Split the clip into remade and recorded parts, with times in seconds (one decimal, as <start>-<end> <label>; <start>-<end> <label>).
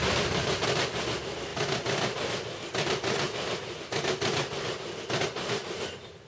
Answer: 0.0-6.3 recorded